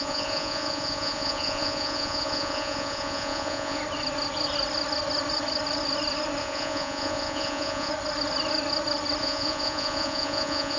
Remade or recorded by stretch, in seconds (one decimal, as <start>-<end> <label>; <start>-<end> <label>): 0.0-3.8 remade; 3.8-6.4 recorded; 6.4-7.9 remade; 7.9-9.2 recorded; 9.2-10.8 remade